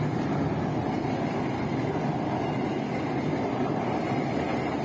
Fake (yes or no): no